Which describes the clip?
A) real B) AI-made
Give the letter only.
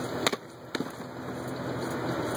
A